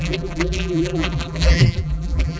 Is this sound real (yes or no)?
no